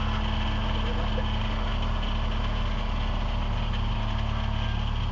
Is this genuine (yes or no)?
yes